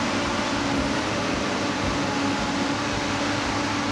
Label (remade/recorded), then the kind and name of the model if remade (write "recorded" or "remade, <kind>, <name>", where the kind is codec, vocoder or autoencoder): recorded